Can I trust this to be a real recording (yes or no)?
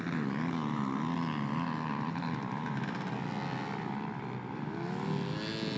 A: yes